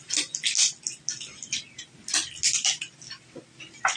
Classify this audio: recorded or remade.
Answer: recorded